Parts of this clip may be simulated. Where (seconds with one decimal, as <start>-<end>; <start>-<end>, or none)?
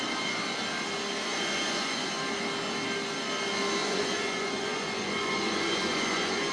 1.3-2.1; 3.8-6.5